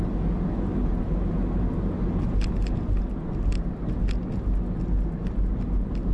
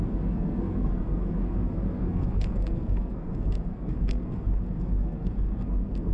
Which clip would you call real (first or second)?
first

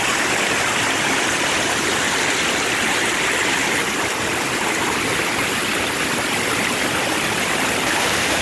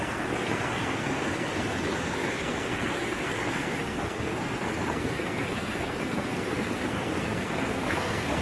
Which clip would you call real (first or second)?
first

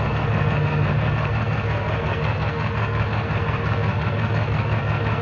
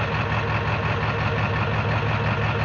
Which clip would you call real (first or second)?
second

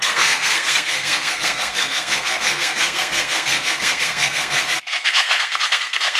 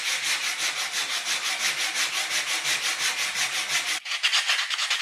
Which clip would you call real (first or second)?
second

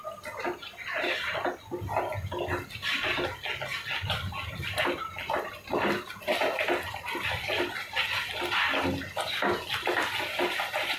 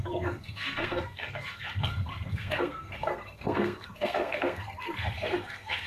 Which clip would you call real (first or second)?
first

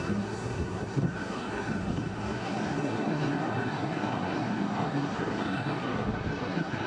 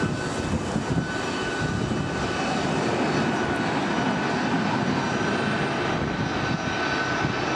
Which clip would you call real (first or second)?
second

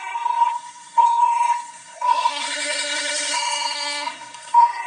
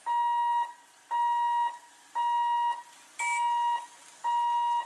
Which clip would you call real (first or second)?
second